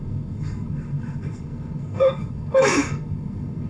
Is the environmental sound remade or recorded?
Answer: remade